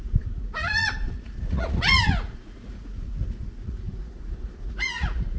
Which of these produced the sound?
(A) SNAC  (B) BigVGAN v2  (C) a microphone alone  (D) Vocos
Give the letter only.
D